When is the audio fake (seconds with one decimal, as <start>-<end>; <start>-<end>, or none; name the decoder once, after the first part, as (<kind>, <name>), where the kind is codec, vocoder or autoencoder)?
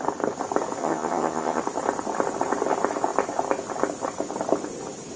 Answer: 0.8-1.6 (vocoder, HiFi-GAN)